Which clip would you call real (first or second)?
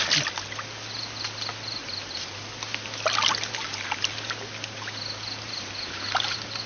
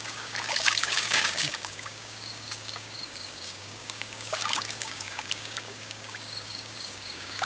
first